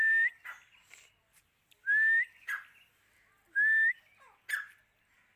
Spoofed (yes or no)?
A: no